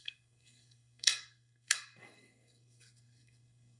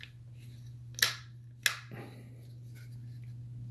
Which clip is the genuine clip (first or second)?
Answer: second